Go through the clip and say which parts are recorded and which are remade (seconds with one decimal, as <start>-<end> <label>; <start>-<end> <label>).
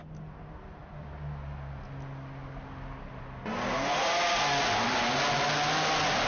0.0-6.3 recorded